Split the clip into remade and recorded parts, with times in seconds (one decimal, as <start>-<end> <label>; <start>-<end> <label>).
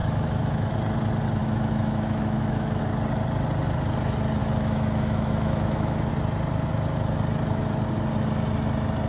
0.0-0.7 remade; 0.7-1.4 recorded; 1.4-2.8 remade; 2.8-4.4 recorded; 4.4-6.1 remade; 6.1-9.1 recorded